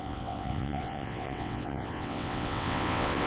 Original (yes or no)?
no